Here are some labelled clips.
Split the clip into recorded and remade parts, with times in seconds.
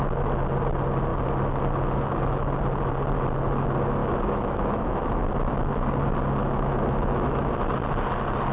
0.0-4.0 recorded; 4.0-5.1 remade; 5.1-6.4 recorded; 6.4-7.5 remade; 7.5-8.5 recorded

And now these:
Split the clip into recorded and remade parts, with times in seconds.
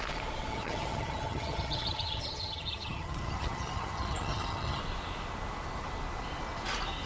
0.0-0.5 recorded; 0.5-4.8 remade; 4.8-7.1 recorded